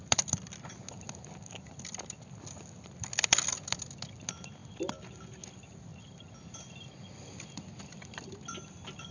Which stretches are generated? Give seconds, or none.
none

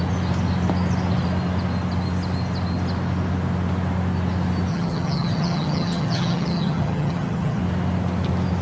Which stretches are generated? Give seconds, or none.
4.7-7.6

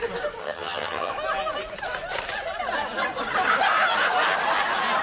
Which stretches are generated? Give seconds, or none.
0.4-1.1

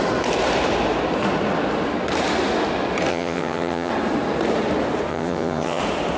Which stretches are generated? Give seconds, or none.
3.1-3.9; 5.1-5.8

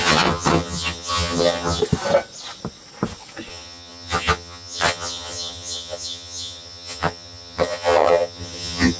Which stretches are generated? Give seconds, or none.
0.0-1.8; 3.5-9.0

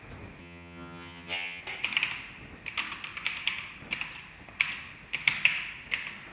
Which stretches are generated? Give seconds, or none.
0.4-1.6

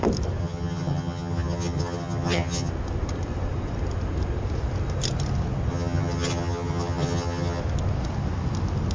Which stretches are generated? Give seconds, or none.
0.4-2.7; 5.7-7.6

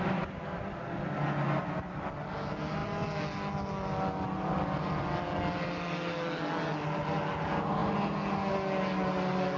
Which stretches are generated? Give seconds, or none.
none